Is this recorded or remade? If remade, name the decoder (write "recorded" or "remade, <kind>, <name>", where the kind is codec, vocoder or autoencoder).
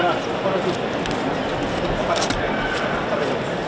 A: recorded